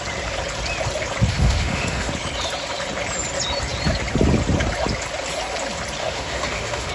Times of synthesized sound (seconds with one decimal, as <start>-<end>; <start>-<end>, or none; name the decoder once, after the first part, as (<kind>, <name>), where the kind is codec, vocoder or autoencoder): 1.3-2.1 (autoencoder, DAC-VAE); 6.0-6.9